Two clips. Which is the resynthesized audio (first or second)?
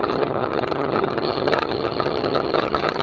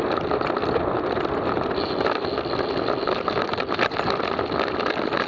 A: first